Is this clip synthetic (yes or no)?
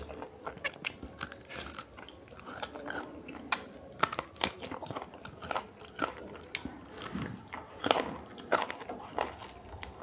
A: no